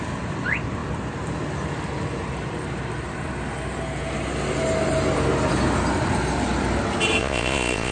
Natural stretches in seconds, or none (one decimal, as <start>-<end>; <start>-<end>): 0.0-7.2